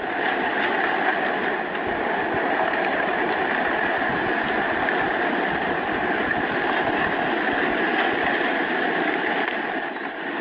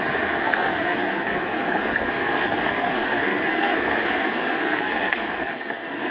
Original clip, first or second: first